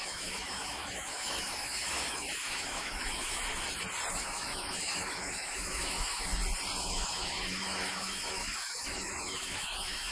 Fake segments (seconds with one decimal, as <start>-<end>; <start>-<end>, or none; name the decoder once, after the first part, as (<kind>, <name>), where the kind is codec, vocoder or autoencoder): 0.0-3.4 (autoencoder, DAC-VAE); 4.1-6.3; 6.8-10.1